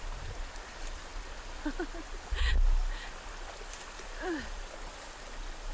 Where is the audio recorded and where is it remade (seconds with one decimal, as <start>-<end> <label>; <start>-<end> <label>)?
0.0-5.7 recorded